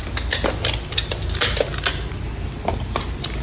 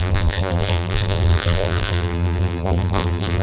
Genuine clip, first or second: first